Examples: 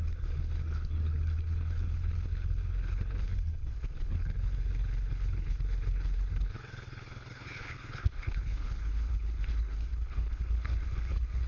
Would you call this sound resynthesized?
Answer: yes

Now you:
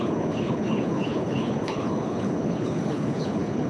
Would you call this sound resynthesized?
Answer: yes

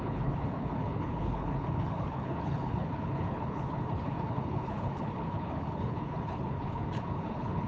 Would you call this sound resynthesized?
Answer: yes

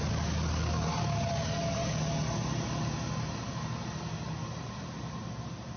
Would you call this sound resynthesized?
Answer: no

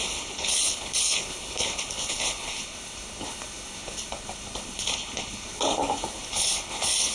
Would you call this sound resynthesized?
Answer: yes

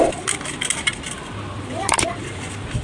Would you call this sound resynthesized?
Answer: no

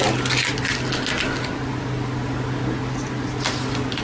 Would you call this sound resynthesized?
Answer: no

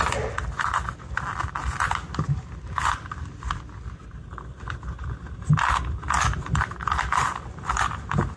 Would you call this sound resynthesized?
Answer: no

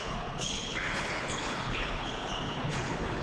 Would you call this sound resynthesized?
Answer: yes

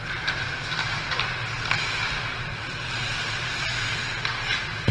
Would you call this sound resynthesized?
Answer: no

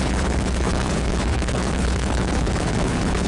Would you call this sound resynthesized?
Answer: yes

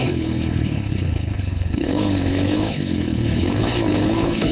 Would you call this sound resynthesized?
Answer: yes